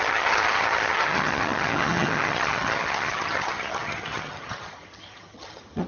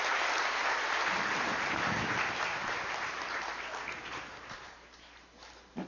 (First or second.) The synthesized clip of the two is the first